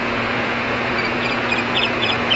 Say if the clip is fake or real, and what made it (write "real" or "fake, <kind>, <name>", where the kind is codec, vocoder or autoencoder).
fake, vocoder, Vocos